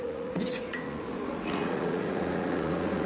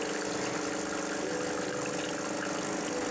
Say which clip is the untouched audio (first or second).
second